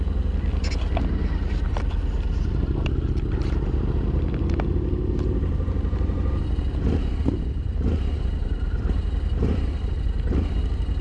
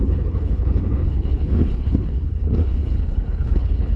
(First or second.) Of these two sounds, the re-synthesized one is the second